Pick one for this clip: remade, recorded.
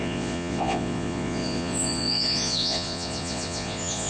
remade